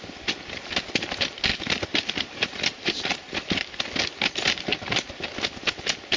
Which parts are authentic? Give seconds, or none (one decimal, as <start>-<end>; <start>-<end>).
0.0-1.5; 3.8-6.2